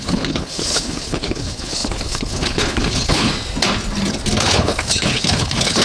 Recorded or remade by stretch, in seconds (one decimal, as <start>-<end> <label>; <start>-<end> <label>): 0.0-3.3 remade; 3.3-4.4 recorded; 4.4-5.8 remade

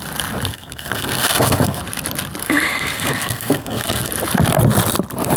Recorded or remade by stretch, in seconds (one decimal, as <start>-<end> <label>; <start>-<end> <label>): 0.0-0.5 recorded; 0.5-1.8 remade; 1.8-2.4 recorded; 2.4-4.1 remade; 4.1-5.4 recorded